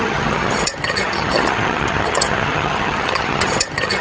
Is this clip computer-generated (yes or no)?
yes